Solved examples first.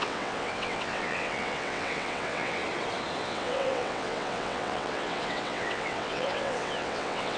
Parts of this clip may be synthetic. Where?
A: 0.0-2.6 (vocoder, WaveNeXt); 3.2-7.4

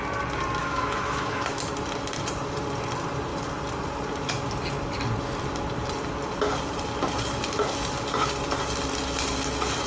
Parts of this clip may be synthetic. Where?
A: 0.6-1.6 (autoencoder, DAC-VAE)

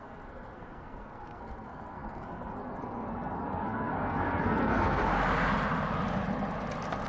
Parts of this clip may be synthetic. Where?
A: 0.0-5.0 (codec, SNAC)

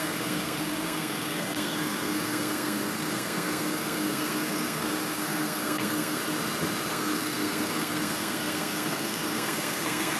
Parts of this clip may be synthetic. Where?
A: 0.0-6.2 (codec, SNAC); 6.9-10.2